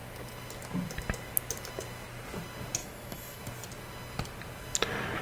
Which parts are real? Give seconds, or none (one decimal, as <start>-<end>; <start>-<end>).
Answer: 0.0-2.8; 3.4-5.2